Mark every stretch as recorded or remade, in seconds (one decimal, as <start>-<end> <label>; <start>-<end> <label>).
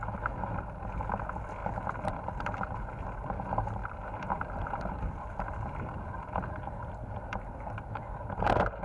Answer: 0.0-1.6 recorded; 1.6-2.9 remade; 2.9-3.8 recorded; 3.8-8.1 remade; 8.1-8.8 recorded